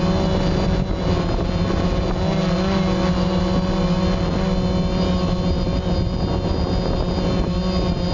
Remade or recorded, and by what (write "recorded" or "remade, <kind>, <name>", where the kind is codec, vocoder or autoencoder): recorded